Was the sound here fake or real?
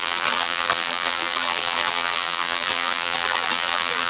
fake